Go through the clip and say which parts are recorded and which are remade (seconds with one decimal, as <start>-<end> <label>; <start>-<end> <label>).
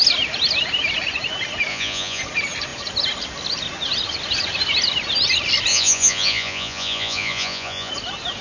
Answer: 0.0-1.7 recorded; 1.7-2.2 remade; 2.2-5.7 recorded; 5.7-7.9 remade; 7.9-8.4 recorded